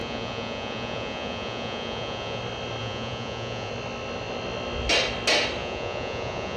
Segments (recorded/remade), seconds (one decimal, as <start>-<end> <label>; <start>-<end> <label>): 0.0-2.4 remade; 2.4-2.8 recorded; 2.8-3.7 remade; 3.7-5.6 recorded; 5.6-6.6 remade